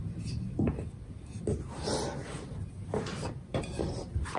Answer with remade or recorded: recorded